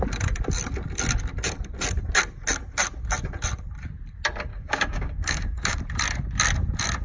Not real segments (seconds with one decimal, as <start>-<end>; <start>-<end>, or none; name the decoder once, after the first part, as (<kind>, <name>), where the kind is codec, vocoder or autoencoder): 4.5-5.8 (codec, DAC)